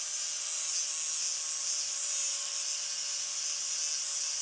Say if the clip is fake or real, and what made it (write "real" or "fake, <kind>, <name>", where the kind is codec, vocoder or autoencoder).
real